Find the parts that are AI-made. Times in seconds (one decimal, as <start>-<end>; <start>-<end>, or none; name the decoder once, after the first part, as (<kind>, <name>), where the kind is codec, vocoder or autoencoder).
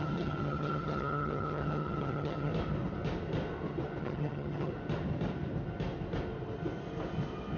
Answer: 0.0-2.5 (vocoder, HiFi-GAN); 4.0-4.7